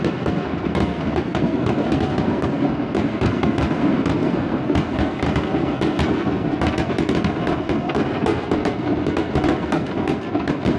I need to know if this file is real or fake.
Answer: fake